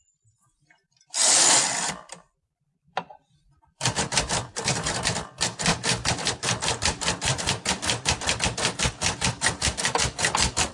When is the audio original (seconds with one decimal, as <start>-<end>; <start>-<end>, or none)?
none